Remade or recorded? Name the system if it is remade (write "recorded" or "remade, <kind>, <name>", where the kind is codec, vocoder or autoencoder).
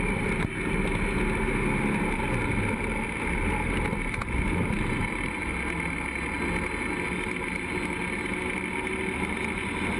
recorded